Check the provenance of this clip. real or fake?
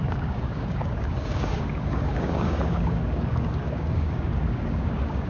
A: fake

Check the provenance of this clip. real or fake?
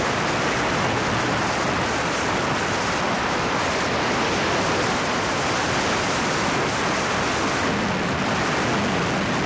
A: real